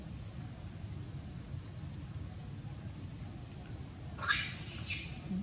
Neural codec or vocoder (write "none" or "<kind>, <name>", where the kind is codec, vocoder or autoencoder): none